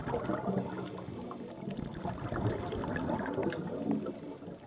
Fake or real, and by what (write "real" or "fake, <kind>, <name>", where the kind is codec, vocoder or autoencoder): real